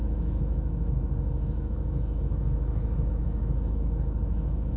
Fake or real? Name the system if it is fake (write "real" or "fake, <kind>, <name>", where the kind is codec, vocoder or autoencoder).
fake, autoencoder, DAC-VAE